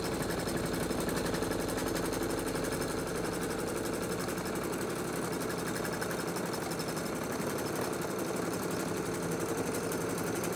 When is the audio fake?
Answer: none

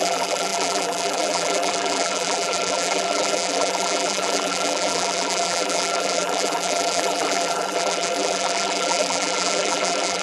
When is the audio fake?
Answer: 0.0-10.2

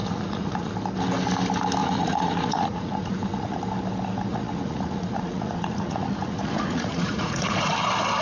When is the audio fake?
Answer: 0.0-0.7; 1.8-3.6; 4.3-7.7